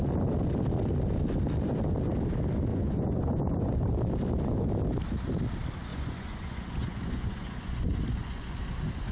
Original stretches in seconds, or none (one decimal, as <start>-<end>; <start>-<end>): 0.0-2.7; 3.9-5.9; 8.6-9.1